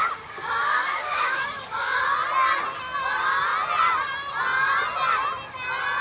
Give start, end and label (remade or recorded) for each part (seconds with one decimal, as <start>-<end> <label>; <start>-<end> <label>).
0.0-2.0 remade; 2.0-6.0 recorded